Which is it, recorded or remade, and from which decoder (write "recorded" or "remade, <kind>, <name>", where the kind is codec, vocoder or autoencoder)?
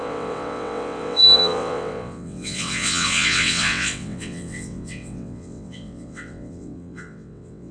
remade, vocoder, WaveNeXt